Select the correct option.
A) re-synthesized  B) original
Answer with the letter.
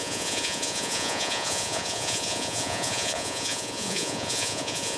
A